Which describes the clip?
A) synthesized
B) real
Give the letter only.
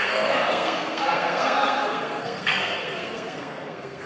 A